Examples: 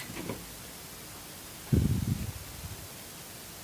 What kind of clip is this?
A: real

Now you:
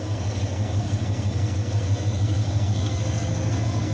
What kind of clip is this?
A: fake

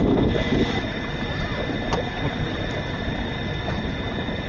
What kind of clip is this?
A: real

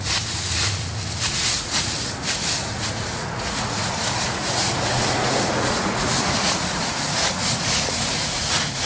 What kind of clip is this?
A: fake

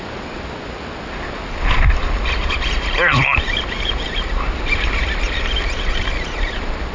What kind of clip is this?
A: real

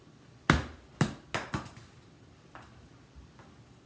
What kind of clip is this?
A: real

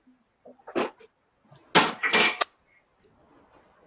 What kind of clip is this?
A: real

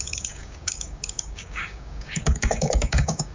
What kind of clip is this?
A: fake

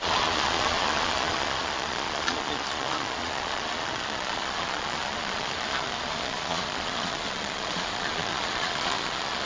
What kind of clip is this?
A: fake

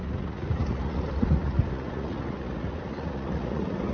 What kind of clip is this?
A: fake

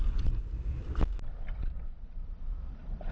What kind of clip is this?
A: real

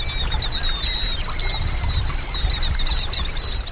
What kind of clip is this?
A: real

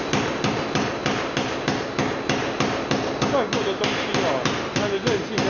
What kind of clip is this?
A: real